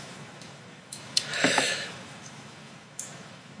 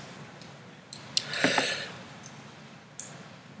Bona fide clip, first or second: second